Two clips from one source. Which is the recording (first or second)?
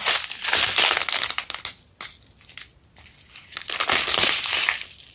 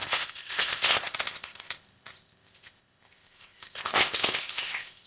first